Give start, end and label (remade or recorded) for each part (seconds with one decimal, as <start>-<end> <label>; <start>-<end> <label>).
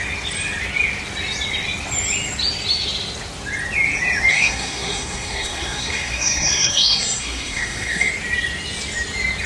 0.0-4.3 recorded; 4.3-8.1 remade; 8.1-9.5 recorded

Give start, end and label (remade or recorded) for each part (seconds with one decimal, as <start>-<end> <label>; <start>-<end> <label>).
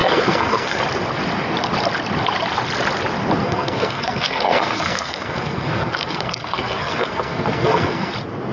0.0-0.8 remade; 0.8-3.4 recorded; 3.4-8.1 remade; 8.1-8.5 recorded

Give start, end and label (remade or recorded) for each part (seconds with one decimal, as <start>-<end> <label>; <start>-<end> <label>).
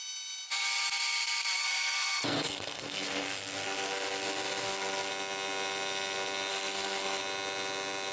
0.0-1.6 recorded; 1.6-5.1 remade; 5.1-6.5 recorded; 6.5-7.2 remade; 7.2-8.1 recorded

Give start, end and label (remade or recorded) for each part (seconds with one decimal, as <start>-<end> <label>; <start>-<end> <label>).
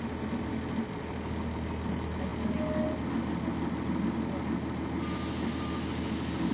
0.0-6.5 recorded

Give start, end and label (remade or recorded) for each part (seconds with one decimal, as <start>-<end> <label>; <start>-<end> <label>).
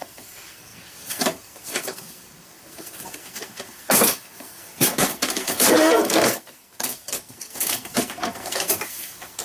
0.0-9.4 remade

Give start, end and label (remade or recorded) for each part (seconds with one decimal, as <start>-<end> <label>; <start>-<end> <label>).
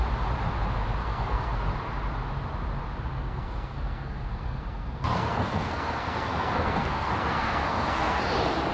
0.0-1.0 recorded; 1.0-1.6 remade; 1.6-3.2 recorded; 3.2-8.2 remade; 8.2-8.7 recorded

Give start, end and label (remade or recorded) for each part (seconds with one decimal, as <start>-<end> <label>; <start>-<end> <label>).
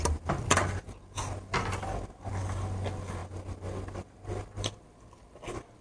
0.0-5.8 recorded